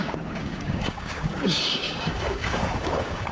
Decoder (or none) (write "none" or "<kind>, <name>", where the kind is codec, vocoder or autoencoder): codec, DAC